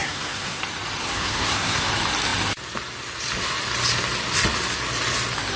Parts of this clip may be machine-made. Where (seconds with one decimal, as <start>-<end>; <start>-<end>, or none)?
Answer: 0.0-0.6; 1.0-1.9